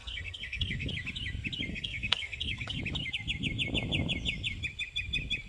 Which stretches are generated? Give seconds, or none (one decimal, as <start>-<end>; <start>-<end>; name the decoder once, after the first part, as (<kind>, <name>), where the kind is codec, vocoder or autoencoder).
0.0-0.9 (codec, SNAC); 1.7-2.8